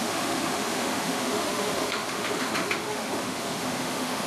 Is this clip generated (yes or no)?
yes